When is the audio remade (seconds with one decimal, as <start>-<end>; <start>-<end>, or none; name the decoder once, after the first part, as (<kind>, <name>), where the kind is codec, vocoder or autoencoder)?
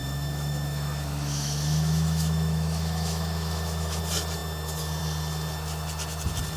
0.0-4.0 (autoencoder, DAC-VAE)